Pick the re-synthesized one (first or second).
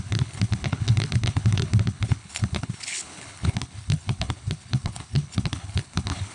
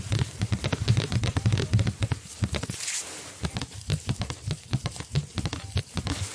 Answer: first